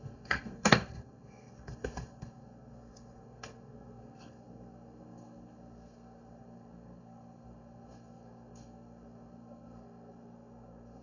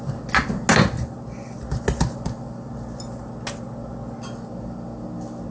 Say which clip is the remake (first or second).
first